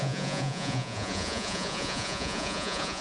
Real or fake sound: fake